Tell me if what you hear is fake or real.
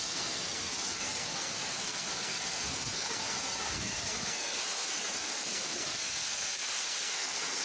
fake